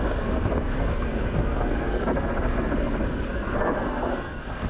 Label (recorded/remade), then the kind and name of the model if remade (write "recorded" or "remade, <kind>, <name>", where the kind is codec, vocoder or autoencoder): remade, codec, SNAC